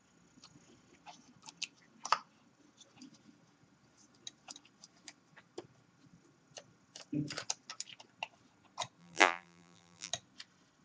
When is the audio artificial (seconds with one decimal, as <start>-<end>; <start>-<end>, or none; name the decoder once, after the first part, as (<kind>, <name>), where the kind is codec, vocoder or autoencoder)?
9.0-10.1 (vocoder, BigVGAN v2)